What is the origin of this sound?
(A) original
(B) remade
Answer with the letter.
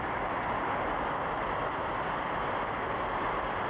A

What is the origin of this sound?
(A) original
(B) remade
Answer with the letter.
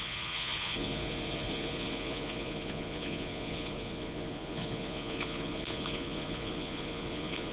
B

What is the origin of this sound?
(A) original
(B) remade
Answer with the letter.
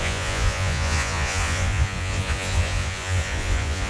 B